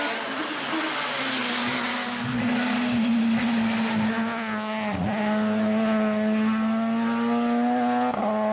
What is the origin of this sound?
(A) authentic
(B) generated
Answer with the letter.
A